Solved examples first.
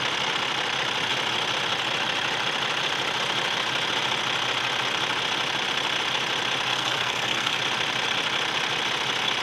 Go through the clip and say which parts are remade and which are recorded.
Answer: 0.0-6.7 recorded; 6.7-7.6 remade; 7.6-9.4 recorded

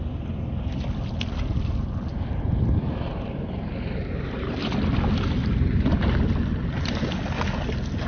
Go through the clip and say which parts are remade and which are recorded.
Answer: 0.0-2.1 recorded; 2.1-4.7 remade; 4.7-5.4 recorded; 5.4-6.1 remade; 6.1-8.1 recorded

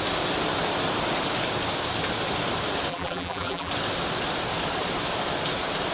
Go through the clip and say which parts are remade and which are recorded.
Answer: 0.0-2.9 recorded; 2.9-3.7 remade; 3.7-5.9 recorded

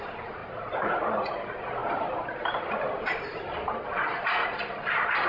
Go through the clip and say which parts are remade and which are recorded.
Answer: 0.0-4.4 remade; 4.4-5.3 recorded